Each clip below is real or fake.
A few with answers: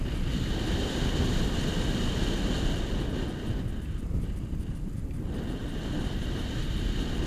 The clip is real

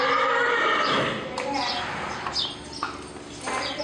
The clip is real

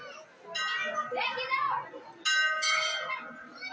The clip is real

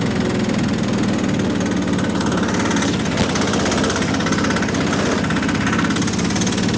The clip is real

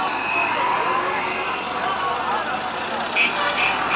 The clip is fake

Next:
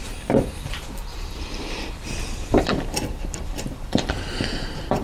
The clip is fake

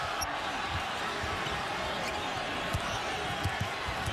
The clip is real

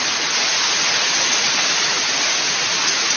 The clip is fake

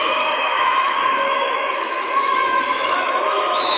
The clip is fake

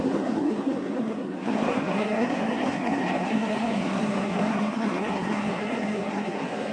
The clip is fake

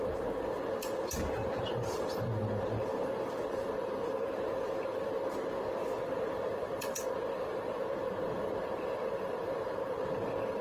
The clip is fake